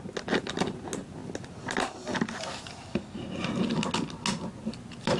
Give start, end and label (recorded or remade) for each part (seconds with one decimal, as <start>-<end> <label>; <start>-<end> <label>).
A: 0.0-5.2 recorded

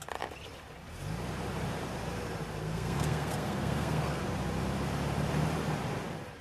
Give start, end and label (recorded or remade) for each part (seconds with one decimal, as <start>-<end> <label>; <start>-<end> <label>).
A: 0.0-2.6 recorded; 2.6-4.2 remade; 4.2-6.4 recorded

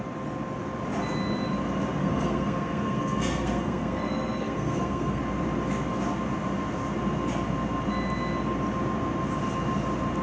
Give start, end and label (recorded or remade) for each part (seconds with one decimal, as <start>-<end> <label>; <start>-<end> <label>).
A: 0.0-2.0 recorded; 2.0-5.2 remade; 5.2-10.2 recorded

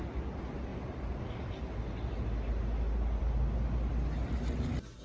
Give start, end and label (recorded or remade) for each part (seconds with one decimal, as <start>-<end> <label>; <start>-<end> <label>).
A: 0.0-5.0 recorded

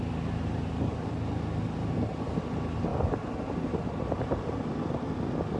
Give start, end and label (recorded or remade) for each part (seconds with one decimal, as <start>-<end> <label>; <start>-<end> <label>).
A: 0.0-5.6 recorded

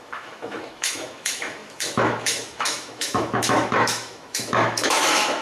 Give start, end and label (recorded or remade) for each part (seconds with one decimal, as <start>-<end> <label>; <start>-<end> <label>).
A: 0.0-5.4 remade